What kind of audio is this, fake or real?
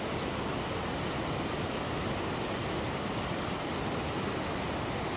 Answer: real